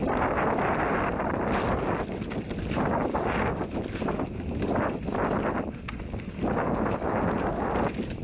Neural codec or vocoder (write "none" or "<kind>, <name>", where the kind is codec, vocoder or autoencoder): none